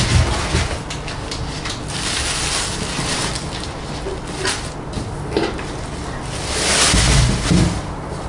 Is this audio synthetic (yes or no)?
no